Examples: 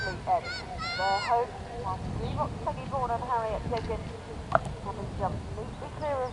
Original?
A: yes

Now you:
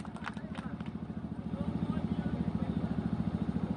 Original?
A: yes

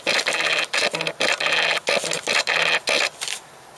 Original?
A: yes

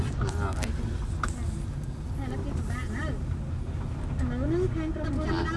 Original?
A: yes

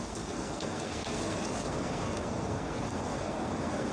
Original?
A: no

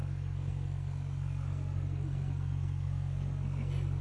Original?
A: no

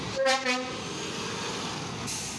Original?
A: yes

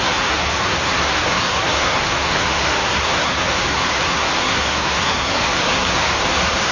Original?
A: no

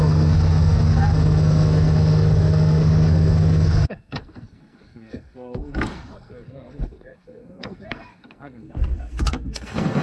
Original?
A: no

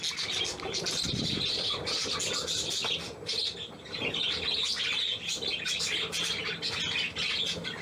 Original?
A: yes